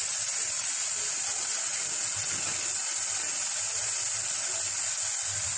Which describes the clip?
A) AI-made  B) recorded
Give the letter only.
B